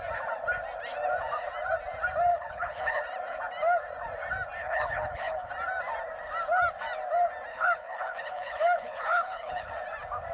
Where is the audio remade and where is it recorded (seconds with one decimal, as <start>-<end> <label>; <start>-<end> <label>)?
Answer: 0.0-2.3 recorded; 2.3-3.0 remade; 3.0-4.6 recorded; 4.6-5.5 remade; 5.5-7.5 recorded; 7.5-9.7 remade; 9.7-10.3 recorded